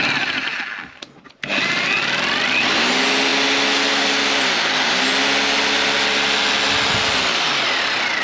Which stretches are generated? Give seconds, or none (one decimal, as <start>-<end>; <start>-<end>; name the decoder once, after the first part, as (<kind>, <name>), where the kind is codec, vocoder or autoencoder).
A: none